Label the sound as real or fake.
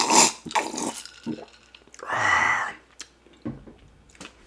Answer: real